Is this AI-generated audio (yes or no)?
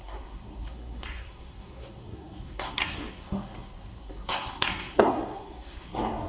yes